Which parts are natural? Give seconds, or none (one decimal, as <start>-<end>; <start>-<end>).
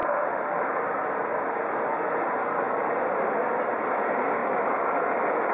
0.6-5.5